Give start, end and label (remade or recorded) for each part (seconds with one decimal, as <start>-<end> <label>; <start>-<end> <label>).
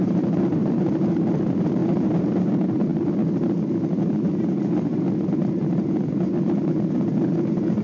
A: 0.0-7.8 remade